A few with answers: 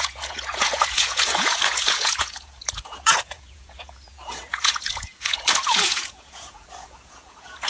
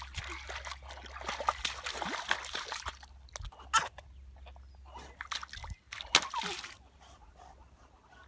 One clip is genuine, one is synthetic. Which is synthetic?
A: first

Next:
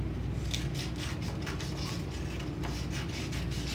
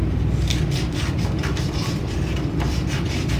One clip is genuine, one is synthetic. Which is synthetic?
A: second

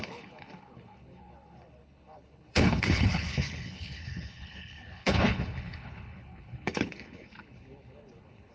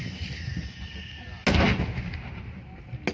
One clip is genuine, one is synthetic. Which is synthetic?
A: first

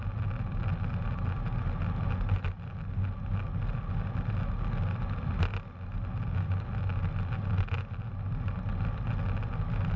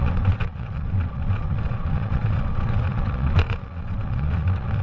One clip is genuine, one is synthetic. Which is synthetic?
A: second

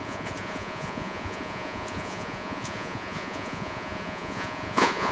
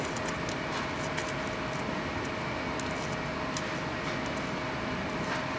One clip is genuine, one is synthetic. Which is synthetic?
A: first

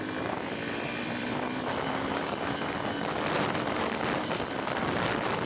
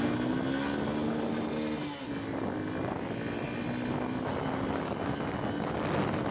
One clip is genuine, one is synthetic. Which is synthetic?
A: first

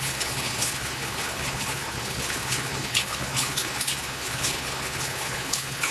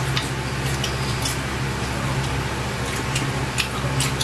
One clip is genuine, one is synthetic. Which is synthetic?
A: first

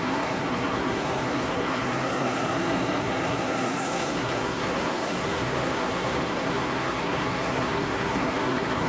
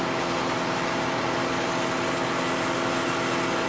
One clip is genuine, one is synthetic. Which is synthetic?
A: first